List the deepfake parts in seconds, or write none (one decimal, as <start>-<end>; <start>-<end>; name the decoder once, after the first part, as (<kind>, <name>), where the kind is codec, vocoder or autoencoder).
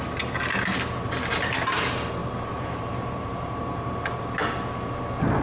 2.2-4.3 (vocoder, BigVGAN v2)